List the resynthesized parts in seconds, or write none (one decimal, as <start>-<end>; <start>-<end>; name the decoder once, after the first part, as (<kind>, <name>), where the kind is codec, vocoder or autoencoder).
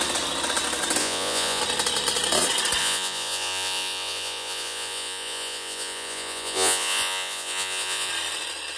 1.0-1.6 (vocoder, Vocos); 2.8-8.1